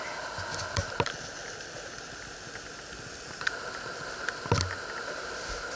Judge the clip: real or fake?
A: real